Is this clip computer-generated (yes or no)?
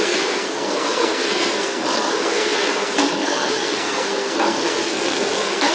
yes